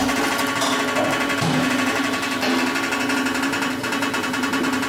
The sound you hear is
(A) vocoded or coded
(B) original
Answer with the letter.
B